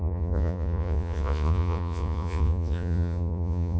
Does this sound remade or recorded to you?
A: remade